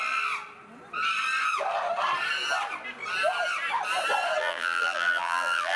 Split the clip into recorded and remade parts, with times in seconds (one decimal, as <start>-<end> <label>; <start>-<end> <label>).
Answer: 0.0-4.4 recorded; 4.4-5.8 remade